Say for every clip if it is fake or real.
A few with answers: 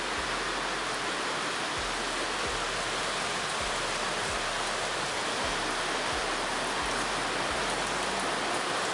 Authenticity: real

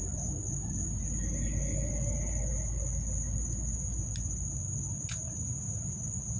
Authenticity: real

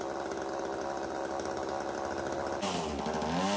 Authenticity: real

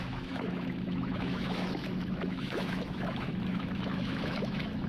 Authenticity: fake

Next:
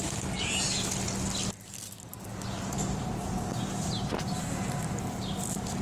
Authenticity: real